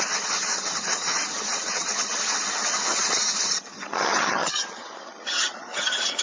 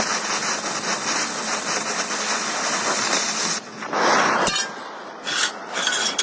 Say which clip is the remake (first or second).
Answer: first